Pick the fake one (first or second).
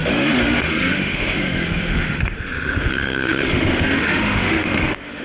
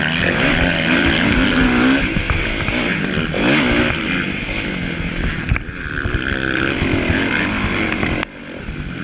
first